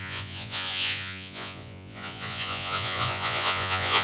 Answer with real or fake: fake